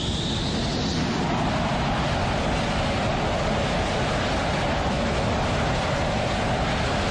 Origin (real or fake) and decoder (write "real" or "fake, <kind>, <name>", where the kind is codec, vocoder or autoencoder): real